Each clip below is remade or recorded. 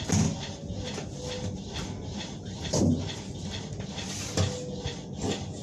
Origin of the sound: recorded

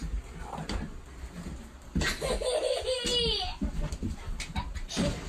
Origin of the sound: recorded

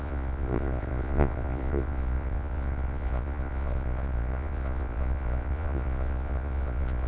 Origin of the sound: remade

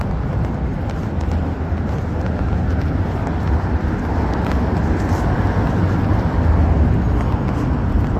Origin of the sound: recorded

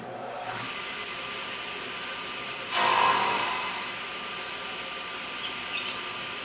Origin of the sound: remade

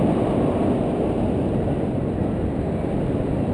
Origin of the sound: recorded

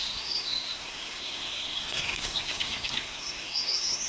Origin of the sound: remade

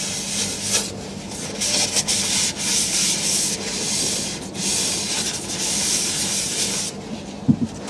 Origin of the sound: recorded